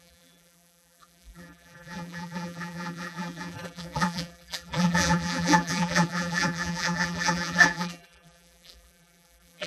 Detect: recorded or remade remade